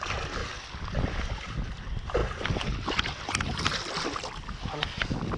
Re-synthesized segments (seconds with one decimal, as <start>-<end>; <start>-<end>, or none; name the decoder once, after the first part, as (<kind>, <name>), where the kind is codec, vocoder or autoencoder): none